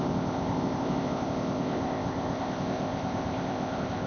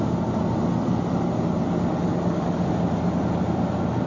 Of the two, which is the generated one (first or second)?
first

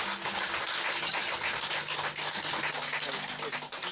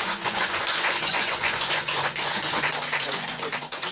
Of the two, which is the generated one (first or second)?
second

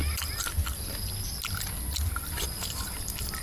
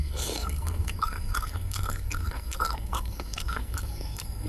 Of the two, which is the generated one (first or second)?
second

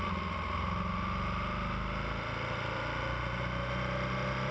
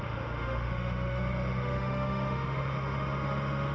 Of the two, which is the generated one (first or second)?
second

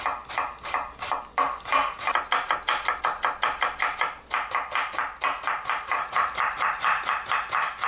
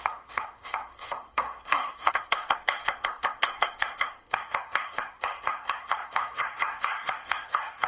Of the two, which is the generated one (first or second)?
second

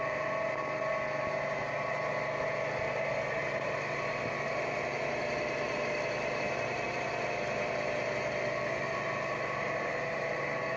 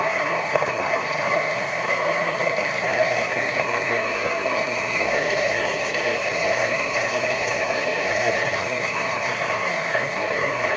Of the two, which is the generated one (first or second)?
second